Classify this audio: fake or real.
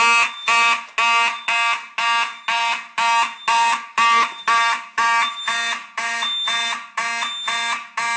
real